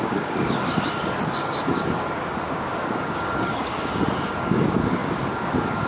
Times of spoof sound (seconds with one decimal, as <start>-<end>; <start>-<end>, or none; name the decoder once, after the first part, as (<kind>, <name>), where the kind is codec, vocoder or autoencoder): 0.0-5.9 (codec, DAC)

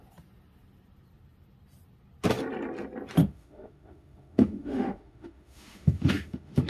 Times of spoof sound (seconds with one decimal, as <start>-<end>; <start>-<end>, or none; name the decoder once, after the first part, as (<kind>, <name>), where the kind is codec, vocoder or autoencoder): 3.2-6.7 (autoencoder, DAC-VAE)

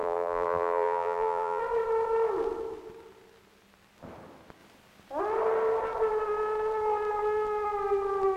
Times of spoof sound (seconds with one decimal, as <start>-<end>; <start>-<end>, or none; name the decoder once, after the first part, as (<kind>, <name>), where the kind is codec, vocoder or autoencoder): 0.0-1.6 (vocoder, BigVGAN v2)

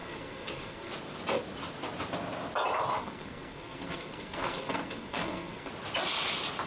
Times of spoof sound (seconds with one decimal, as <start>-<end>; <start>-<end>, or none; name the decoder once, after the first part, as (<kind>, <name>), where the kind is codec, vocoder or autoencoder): 0.0-0.9 (codec, SNAC); 2.9-5.7

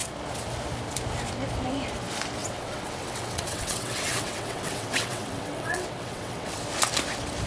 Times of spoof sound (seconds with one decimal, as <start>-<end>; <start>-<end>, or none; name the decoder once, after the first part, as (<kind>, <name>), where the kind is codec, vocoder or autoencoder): 2.4-6.6 (vocoder, WaveNeXt)

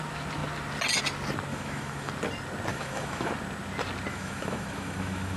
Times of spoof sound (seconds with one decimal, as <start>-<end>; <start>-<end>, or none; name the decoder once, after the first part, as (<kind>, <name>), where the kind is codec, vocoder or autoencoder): 1.5-2.1 (autoencoder, DAC-VAE); 2.7-3.3; 4.1-5.4

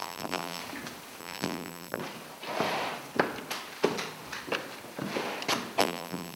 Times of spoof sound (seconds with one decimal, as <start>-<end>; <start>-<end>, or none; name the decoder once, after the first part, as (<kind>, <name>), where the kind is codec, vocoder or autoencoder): 0.0-0.6 (vocoder, BigVGAN v2); 1.2-2.0; 5.8-6.4